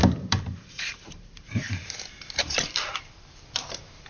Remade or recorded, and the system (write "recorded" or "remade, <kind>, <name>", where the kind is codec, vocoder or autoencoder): remade, vocoder, BigVGAN v2